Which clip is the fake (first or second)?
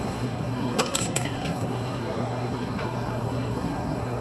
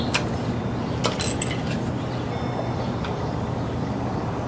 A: first